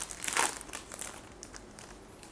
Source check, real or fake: real